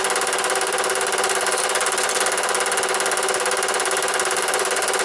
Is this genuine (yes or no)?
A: yes